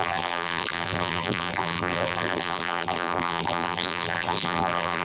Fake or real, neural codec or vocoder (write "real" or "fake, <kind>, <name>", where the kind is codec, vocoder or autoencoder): fake, vocoder, BigVGAN v2